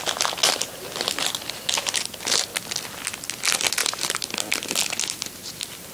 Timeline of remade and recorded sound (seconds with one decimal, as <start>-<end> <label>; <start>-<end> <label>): 0.0-5.9 recorded